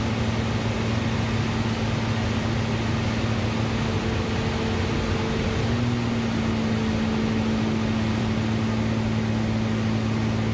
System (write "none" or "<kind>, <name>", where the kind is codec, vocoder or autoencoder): none